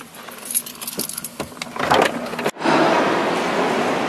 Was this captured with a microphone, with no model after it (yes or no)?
yes